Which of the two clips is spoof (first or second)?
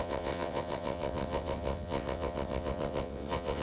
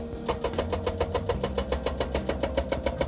first